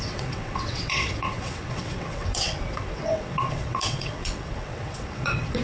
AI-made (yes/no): yes